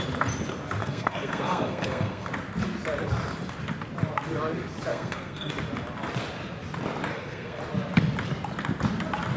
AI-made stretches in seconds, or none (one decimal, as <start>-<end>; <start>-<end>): 0.8-2.3; 4.9-5.5; 7.1-7.6